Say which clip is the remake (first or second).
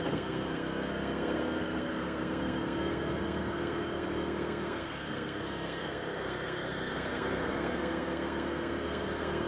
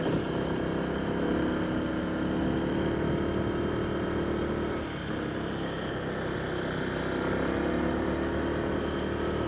first